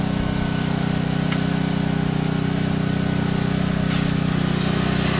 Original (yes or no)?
yes